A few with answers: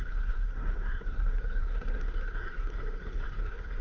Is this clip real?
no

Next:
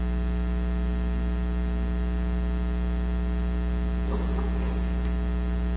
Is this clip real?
yes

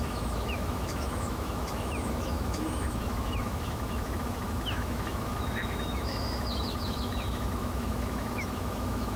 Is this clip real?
no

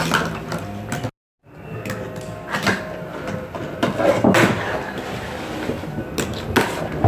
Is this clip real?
yes